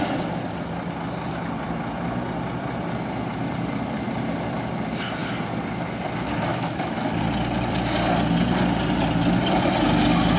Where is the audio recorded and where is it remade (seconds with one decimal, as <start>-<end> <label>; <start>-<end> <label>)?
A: 0.0-6.5 recorded; 6.5-7.2 remade; 7.2-10.4 recorded